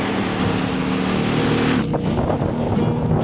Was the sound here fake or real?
real